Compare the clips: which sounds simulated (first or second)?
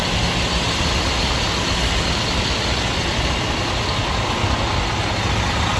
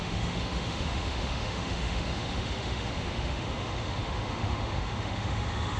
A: second